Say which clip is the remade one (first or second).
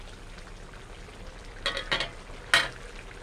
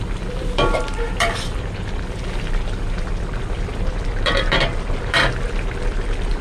second